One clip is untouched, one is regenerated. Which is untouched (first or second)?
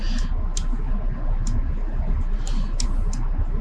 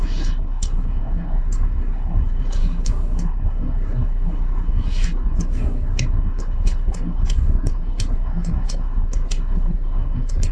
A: first